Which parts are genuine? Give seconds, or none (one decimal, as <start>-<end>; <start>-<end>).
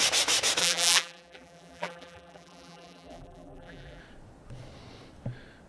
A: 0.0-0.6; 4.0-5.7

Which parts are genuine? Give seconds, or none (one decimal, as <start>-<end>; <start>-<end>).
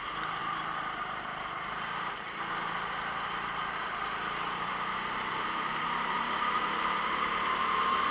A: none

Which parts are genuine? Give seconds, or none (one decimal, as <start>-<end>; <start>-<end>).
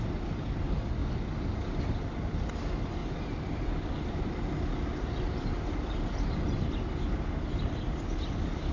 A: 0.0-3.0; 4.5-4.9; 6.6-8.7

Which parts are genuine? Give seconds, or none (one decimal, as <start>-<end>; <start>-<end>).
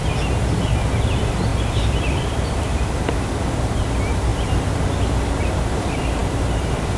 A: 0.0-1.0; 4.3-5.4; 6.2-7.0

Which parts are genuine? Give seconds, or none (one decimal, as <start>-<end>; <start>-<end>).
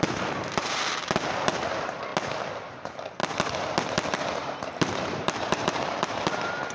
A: 2.1-2.7; 3.2-3.8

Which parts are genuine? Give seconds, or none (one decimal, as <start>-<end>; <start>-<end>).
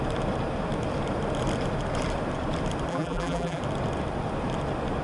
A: 0.0-2.9; 3.6-5.0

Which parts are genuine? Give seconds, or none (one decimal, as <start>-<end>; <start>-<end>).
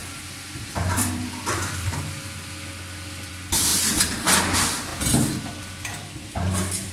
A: 3.7-4.4; 4.9-5.6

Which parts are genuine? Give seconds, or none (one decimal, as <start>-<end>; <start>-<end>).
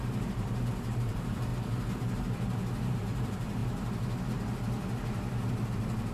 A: 1.5-2.9; 3.6-5.5